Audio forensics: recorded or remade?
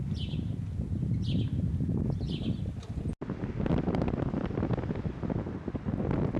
recorded